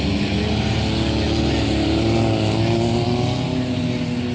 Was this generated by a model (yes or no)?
no